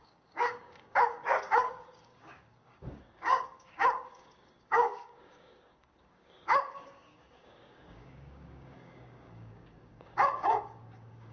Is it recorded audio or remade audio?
remade